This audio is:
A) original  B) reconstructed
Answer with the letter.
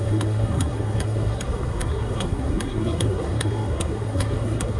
B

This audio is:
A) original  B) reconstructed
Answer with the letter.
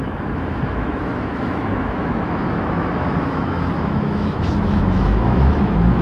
B